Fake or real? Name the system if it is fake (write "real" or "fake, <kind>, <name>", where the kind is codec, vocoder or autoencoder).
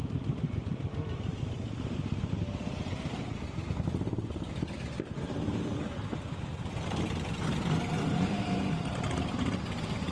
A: real